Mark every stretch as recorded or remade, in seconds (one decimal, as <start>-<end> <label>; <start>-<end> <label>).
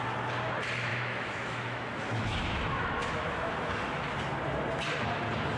0.0-0.9 recorded; 0.9-3.5 remade; 3.5-5.6 recorded